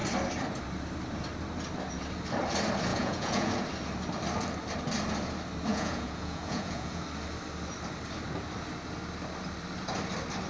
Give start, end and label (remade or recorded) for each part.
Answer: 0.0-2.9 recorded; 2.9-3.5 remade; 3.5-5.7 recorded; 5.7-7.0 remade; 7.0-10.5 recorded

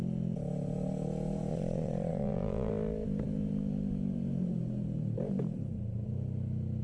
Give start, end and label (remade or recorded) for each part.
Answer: 0.0-1.5 recorded; 1.5-2.7 remade; 2.7-6.8 recorded

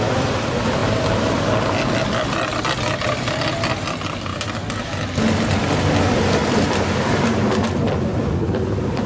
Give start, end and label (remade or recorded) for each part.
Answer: 0.0-9.1 recorded

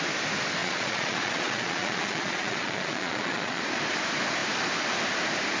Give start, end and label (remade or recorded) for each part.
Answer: 0.0-0.6 recorded; 0.6-3.6 remade; 3.6-5.6 recorded